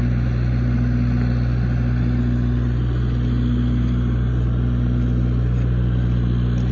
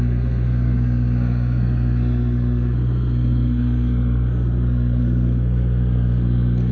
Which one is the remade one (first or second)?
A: second